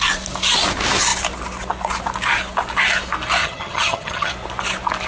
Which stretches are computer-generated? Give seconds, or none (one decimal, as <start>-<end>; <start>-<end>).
3.4-4.3